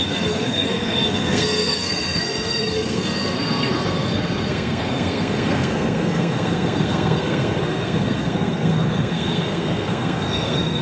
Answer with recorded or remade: remade